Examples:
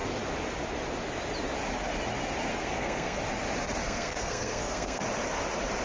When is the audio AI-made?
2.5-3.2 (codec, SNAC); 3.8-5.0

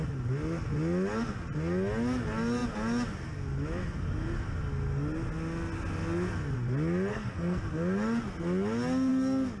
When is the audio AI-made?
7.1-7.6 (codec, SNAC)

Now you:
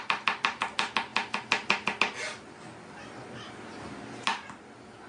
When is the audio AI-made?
none